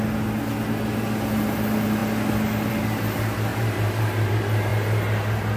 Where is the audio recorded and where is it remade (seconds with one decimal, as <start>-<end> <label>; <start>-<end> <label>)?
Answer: 0.0-3.5 recorded; 3.5-4.3 remade; 4.3-5.6 recorded